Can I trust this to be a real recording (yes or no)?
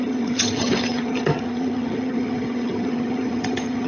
no